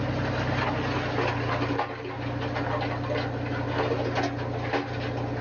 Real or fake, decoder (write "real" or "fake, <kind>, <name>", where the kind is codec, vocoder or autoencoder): real